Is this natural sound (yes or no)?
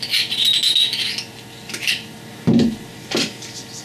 yes